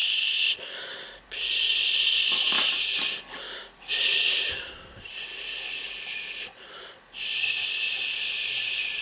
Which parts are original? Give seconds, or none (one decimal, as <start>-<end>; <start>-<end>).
0.0-9.0